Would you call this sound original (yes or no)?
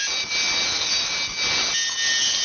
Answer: yes